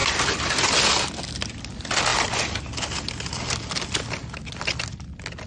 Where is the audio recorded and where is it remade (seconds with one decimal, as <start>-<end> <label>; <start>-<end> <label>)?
0.0-5.5 recorded